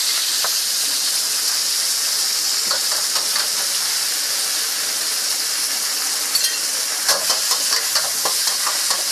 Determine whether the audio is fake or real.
real